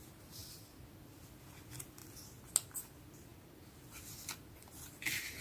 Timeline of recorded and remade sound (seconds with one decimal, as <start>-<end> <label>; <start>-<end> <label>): 0.0-5.4 recorded